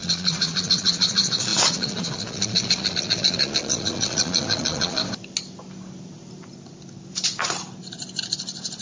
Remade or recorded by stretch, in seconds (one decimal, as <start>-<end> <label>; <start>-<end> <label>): 0.0-5.0 remade; 5.0-8.8 recorded